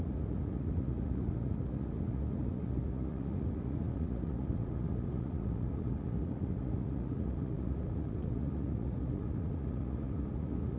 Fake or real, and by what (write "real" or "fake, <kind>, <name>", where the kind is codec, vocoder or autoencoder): fake, vocoder, Vocos